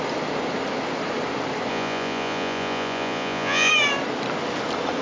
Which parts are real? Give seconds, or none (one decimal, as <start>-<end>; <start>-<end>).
0.0-1.7; 3.7-5.0